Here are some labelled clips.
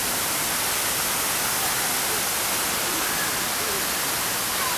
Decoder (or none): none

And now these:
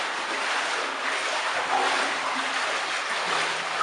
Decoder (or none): none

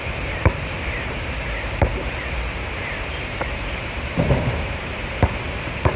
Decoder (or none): vocoder, BigVGAN v2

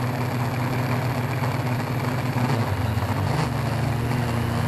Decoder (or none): none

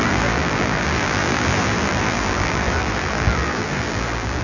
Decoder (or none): vocoder, BigVGAN v2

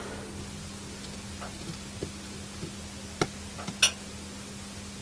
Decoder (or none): none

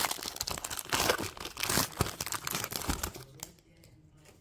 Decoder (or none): none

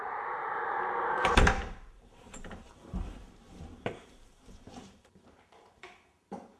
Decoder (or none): vocoder, BigVGAN v2